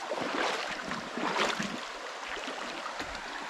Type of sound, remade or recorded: recorded